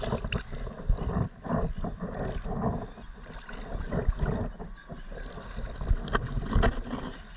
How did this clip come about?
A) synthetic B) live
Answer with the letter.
B